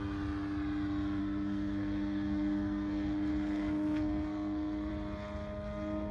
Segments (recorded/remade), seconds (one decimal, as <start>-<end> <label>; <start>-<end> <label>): 0.0-1.2 recorded; 1.2-4.9 remade; 4.9-6.1 recorded